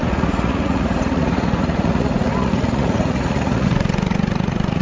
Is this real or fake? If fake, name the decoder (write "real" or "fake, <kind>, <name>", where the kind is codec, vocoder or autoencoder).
fake, vocoder, Vocos